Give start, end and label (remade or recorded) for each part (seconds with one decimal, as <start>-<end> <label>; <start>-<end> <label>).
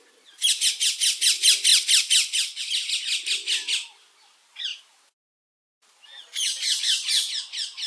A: 0.0-7.9 recorded